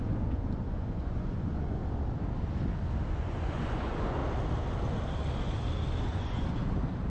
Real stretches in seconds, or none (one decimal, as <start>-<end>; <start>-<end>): 1.8-3.1; 4.2-6.0; 6.6-7.1